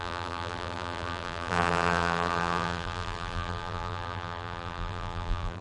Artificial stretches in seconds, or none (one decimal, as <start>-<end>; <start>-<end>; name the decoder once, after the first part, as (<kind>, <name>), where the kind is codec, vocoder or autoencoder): 0.0-5.6 (vocoder, BigVGAN v2)